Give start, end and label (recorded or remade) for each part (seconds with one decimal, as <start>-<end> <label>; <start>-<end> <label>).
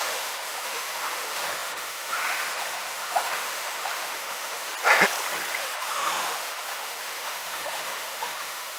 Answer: 0.0-4.7 remade; 4.7-5.5 recorded; 5.5-8.8 remade